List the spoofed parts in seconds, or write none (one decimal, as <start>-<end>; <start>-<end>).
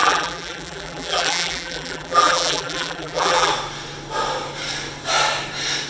0.0-3.5